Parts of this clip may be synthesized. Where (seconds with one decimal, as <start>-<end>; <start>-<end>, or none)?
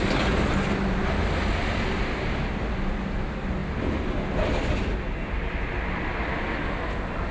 none